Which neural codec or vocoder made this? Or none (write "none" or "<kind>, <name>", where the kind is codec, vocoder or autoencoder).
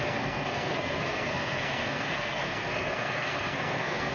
codec, SNAC